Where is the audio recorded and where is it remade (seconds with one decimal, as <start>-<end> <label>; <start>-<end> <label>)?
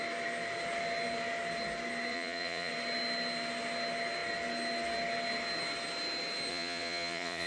0.0-2.1 recorded; 2.1-2.7 remade; 2.7-6.5 recorded; 6.5-7.5 remade